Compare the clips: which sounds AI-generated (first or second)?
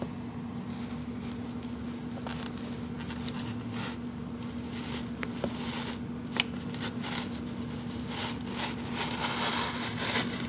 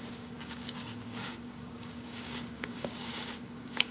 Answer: second